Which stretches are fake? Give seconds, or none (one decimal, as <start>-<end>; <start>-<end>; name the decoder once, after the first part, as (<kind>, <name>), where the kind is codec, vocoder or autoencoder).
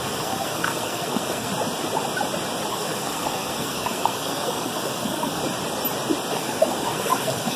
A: 0.0-1.5 (codec, SNAC); 2.7-5.4; 6.3-7.6